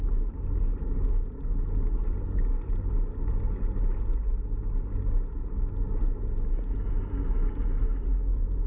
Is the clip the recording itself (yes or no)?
yes